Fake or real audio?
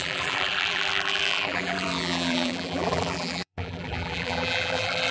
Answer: fake